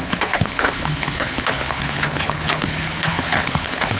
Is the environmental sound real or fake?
fake